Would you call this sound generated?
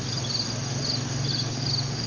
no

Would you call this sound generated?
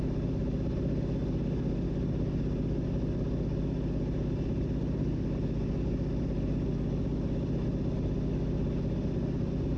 no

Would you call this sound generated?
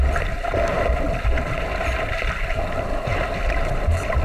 no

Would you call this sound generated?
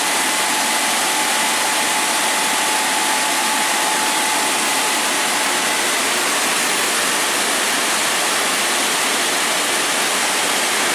no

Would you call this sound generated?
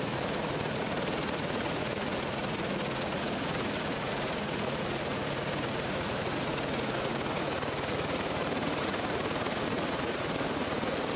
yes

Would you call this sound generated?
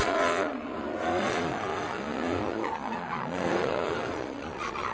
yes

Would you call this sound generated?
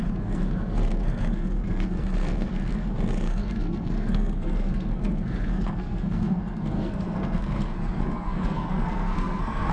yes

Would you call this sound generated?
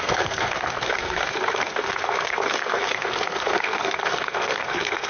yes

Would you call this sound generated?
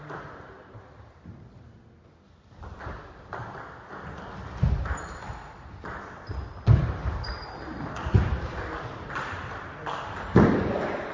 no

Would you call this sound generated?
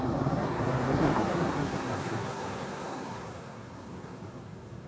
yes